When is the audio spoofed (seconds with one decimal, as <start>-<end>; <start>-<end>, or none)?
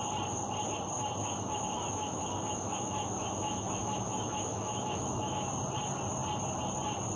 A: 1.2-5.5